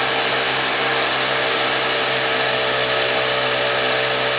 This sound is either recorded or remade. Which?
recorded